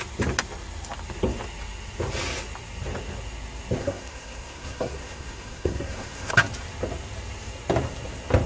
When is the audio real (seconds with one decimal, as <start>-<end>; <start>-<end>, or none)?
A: 0.0-3.8; 6.3-8.5